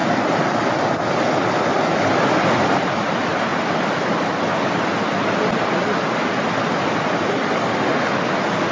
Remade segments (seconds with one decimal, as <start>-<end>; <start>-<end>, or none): none